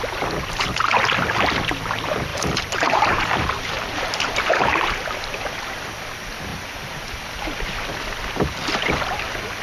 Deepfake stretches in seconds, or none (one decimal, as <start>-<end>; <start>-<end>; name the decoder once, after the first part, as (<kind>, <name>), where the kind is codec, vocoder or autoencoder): 2.3-5.8 (vocoder, BigVGAN v2); 6.5-7.2